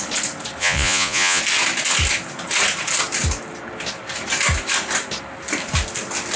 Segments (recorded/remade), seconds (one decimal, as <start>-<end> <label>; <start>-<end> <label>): 0.0-0.6 recorded; 0.6-1.4 remade; 1.4-6.4 recorded